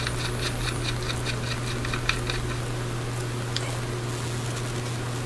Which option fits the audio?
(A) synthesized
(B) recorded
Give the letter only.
B